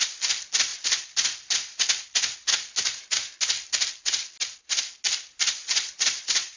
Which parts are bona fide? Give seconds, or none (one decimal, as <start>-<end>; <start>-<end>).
0.0-5.6